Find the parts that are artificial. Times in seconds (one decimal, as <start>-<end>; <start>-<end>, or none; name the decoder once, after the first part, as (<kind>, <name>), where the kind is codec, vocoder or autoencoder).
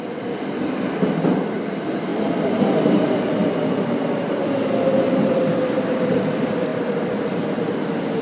2.1-4.3 (vocoder, BigVGAN v2); 6.7-7.7